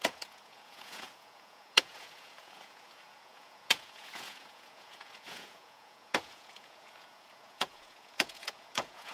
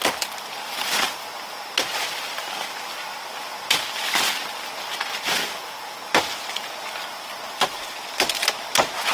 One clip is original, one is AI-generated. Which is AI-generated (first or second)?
first